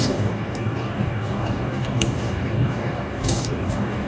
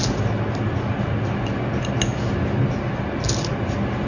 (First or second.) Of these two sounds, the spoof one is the first